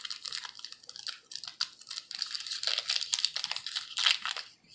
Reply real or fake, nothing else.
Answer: real